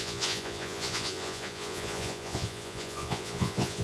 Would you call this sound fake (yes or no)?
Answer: yes